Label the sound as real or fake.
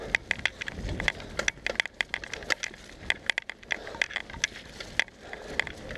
real